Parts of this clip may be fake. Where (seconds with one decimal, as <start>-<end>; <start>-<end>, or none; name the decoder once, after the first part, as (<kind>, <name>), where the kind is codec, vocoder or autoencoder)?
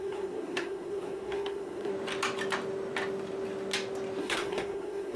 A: 0.0-1.9 (codec, SNAC); 4.2-5.2